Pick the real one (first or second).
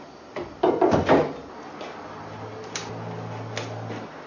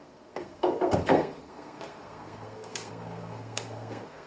first